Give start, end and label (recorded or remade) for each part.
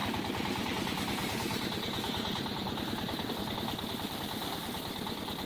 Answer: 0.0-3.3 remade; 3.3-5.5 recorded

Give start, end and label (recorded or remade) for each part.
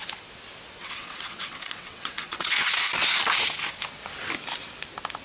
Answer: 0.0-0.8 recorded; 0.8-2.8 remade; 2.8-5.2 recorded